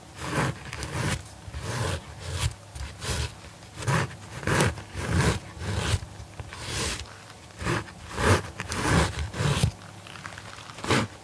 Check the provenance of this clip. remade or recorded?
recorded